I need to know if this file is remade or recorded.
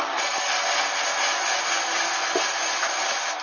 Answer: recorded